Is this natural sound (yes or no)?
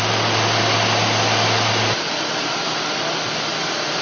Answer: no